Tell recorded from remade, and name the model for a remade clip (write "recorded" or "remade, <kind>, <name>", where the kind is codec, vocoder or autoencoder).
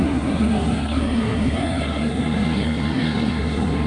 remade, codec, SNAC